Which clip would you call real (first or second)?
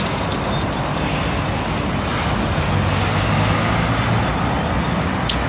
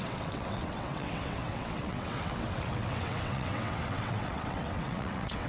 first